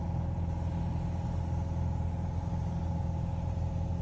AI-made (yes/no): no